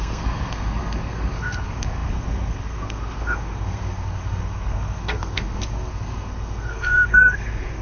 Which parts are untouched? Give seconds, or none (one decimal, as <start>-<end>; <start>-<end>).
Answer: none